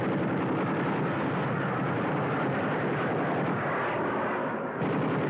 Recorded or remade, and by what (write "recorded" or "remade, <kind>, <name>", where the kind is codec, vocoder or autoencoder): recorded